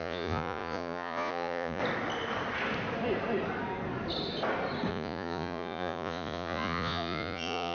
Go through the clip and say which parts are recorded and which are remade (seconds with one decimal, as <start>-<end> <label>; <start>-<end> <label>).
0.0-1.8 remade; 1.8-4.9 recorded; 4.9-7.7 remade